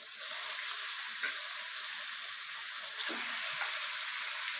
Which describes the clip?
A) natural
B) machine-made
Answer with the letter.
A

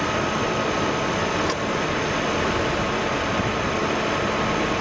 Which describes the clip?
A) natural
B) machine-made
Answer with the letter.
A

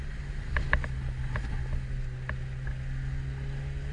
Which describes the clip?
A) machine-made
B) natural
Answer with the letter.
B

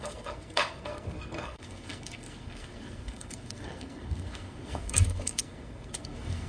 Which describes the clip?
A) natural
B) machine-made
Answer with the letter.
B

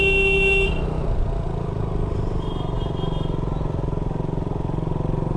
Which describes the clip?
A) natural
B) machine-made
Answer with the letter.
A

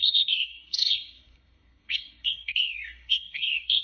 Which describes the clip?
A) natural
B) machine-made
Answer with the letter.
B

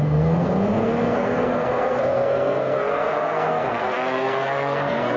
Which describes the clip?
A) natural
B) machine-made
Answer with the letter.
B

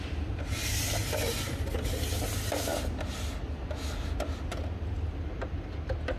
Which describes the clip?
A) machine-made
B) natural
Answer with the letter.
B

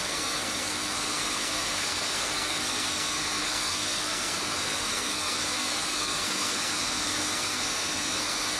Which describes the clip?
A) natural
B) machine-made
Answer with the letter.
B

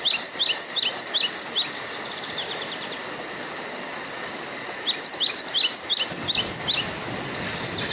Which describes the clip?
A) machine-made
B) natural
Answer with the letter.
B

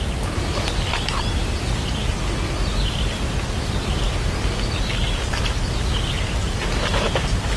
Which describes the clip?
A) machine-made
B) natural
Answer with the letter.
B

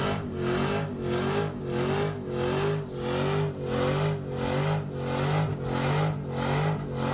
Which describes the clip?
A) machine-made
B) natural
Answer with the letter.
B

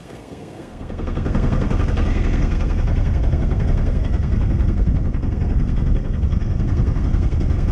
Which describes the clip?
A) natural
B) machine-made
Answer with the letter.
B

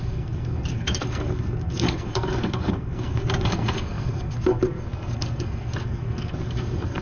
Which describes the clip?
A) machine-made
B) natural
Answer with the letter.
A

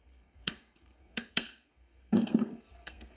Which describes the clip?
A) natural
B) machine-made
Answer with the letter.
B